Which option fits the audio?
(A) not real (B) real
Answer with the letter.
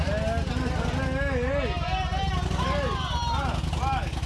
B